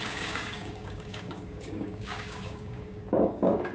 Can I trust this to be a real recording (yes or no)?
no